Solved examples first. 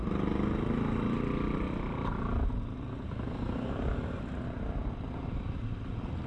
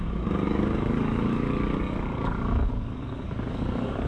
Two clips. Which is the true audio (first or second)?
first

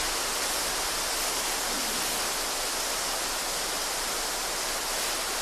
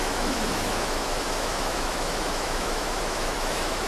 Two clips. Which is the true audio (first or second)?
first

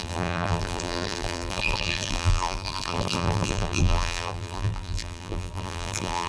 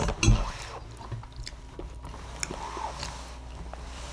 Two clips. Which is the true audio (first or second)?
second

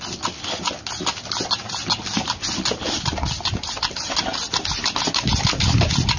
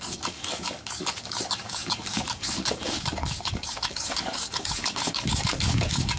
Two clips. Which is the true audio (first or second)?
first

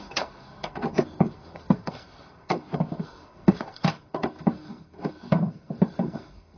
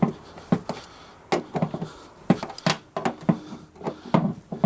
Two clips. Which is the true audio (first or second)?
second